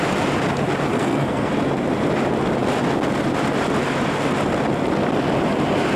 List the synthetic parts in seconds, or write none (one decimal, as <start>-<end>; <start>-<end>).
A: 0.9-1.5